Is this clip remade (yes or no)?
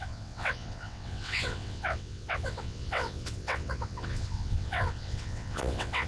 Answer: yes